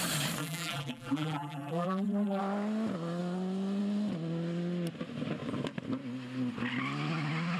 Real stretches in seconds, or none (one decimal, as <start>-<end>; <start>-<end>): 0.0-0.4; 2.4-7.6